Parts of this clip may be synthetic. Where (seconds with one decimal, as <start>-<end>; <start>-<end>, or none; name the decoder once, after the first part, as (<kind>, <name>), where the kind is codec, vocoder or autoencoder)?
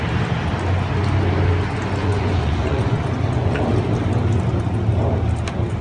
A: 2.0-3.6 (vocoder, Vocos)